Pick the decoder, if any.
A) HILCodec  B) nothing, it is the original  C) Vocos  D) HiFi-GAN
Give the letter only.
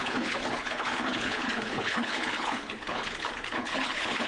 A